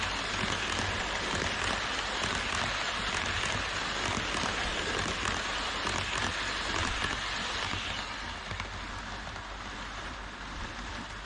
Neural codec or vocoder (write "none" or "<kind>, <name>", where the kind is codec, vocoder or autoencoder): none